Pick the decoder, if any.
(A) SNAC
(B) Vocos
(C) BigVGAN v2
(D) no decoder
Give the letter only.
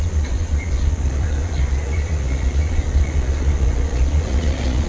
B